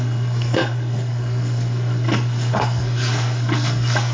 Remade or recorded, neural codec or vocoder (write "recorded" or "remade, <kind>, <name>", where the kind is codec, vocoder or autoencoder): remade, codec, SNAC